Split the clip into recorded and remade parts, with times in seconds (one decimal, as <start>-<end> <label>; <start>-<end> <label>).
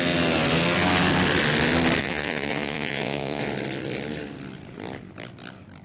0.0-2.0 recorded; 2.0-3.4 remade; 3.4-5.8 recorded